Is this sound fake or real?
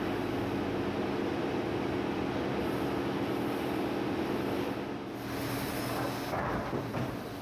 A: real